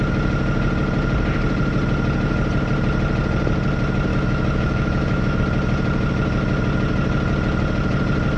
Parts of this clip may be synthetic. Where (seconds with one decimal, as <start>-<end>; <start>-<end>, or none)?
4.1-5.4